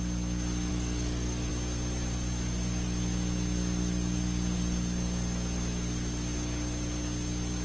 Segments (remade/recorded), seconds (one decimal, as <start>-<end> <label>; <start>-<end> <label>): 0.0-0.7 recorded; 0.7-1.5 remade; 1.5-7.6 recorded